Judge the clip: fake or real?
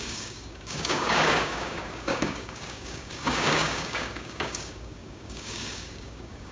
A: fake